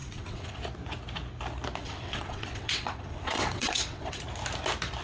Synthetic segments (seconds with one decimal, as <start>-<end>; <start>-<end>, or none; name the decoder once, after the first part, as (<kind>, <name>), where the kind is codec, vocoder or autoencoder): 0.0-0.6 (vocoder, WaveNeXt); 1.8-4.2